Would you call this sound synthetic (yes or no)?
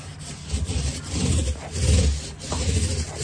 no